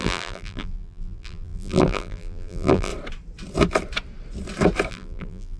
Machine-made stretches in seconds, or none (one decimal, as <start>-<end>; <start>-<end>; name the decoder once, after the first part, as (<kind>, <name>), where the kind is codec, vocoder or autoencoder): 0.0-2.9 (vocoder, BigVGAN v2); 4.9-5.6